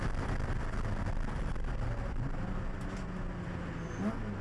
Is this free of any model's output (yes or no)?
yes